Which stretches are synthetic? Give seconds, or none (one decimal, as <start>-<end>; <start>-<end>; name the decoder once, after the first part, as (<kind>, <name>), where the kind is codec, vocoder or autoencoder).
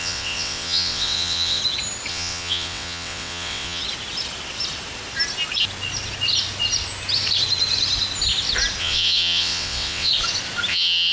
0.0-1.6 (vocoder, WaveNeXt); 2.1-3.8; 8.8-10.1; 10.7-11.1